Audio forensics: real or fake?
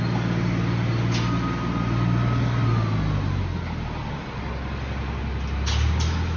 real